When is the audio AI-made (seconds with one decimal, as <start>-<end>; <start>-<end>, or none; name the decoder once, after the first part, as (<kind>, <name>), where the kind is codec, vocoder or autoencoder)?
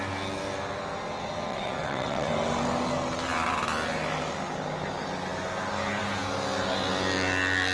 1.5-2.3 (vocoder, WaveNeXt)